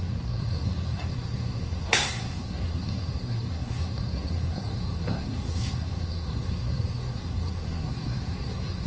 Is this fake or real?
fake